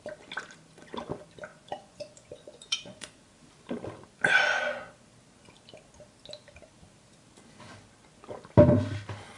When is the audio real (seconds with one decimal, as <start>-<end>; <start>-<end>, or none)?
0.0-1.5; 3.2-9.4